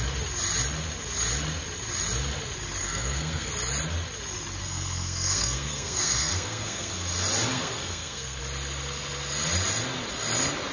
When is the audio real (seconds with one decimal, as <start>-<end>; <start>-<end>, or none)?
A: 0.0-2.8; 3.5-4.6; 6.9-7.5; 8.4-10.7